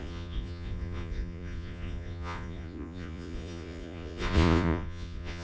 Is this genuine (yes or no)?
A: no